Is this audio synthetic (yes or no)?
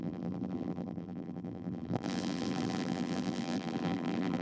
yes